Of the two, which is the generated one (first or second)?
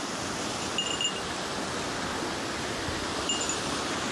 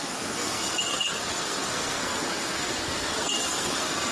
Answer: second